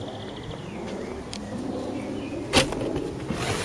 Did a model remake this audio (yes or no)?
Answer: no